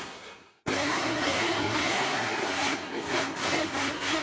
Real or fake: fake